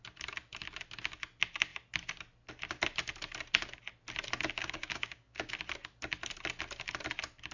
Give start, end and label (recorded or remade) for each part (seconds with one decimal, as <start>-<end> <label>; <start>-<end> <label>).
0.0-4.6 recorded; 4.6-5.5 remade; 5.5-7.5 recorded